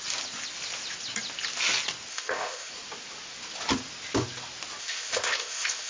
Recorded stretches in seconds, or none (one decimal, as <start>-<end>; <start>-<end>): 0.0-2.1; 2.7-4.8